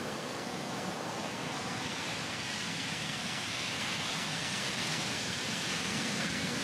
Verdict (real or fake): fake